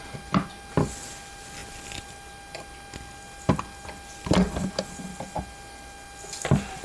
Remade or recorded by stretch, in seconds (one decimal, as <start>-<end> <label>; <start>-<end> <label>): 0.0-6.8 recorded